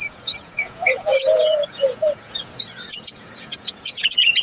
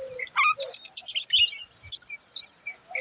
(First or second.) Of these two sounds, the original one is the second